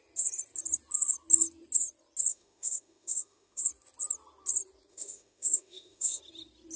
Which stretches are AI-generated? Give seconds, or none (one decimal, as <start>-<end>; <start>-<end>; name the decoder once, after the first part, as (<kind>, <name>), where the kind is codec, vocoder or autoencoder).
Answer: 2.3-3.6 (autoencoder, DAC-VAE); 4.9-6.2

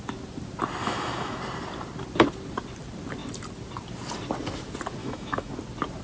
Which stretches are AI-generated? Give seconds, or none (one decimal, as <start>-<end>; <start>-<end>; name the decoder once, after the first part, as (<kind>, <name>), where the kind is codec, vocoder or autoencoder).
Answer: 0.8-1.4 (autoencoder, DAC-VAE); 5.0-5.5